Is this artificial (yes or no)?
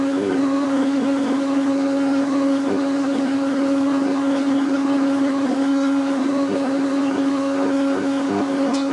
yes